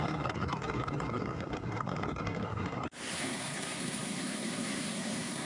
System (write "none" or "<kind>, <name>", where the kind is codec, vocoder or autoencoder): codec, SNAC